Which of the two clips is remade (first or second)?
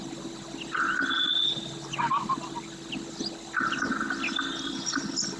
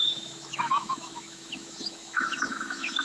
second